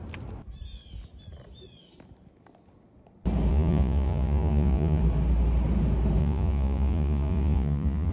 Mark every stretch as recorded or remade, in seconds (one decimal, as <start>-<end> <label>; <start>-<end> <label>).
0.0-3.5 recorded; 3.5-5.0 remade; 5.0-6.2 recorded; 6.2-8.1 remade